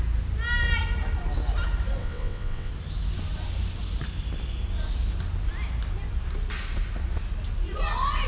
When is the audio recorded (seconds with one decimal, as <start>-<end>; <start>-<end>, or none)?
0.0-2.0; 2.7-8.3